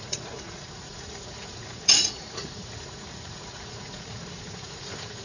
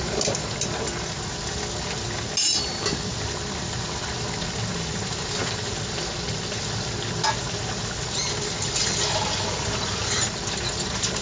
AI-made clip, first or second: first